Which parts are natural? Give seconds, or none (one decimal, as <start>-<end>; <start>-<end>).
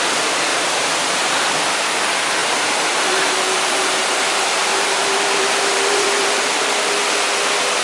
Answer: 0.0-0.5; 1.1-2.4; 6.7-7.8